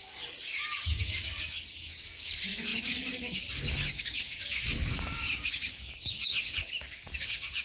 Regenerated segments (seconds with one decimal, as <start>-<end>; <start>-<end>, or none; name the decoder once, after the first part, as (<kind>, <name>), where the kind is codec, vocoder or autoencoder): 0.0-7.6 (codec, DAC)